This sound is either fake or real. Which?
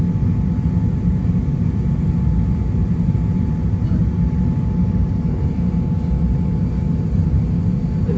real